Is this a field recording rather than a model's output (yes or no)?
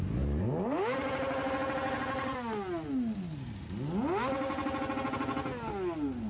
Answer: yes